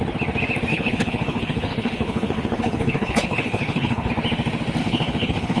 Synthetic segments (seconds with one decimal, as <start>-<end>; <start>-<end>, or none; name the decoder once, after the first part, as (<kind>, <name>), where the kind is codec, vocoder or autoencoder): 0.7-4.1 (codec, HILCodec); 4.8-5.6